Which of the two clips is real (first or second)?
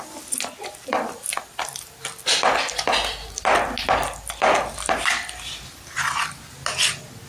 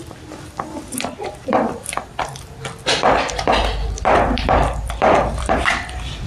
first